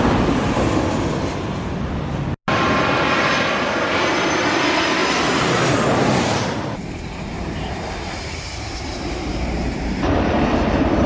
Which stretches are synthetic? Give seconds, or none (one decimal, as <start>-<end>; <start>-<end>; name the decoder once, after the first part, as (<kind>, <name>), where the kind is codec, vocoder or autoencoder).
5.0-5.6 (vocoder, BigVGAN v2); 6.0-10.5